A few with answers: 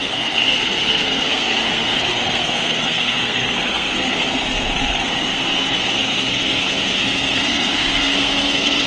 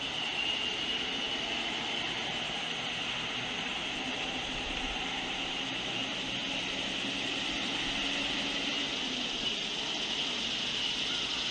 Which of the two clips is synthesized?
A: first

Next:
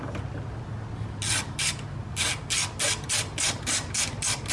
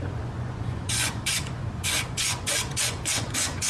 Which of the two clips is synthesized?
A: second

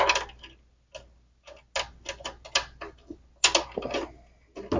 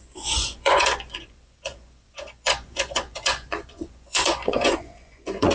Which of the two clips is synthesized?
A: second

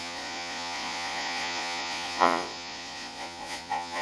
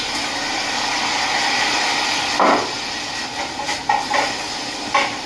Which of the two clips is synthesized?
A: first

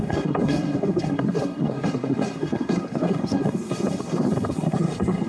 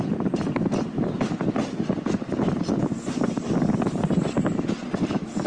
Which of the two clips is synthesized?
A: first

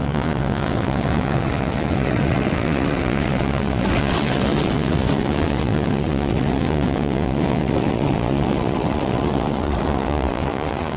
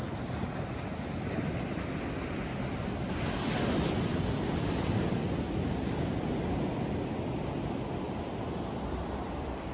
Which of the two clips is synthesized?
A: first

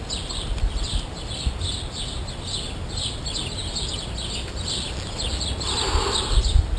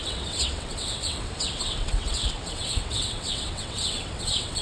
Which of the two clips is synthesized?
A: second